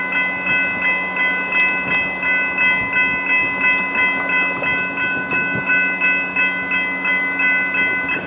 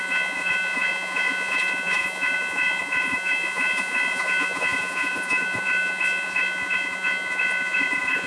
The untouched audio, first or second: first